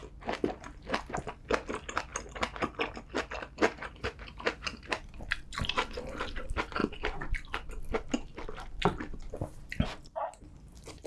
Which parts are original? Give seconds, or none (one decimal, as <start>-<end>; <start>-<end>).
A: 0.0-1.4; 2.1-2.9